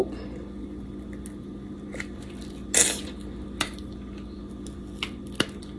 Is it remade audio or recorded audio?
recorded